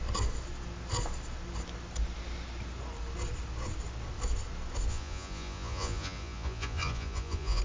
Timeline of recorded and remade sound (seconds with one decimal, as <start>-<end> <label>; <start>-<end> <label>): 0.0-4.9 recorded; 4.9-7.6 remade